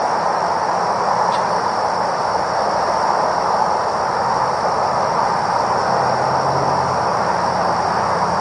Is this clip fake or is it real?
real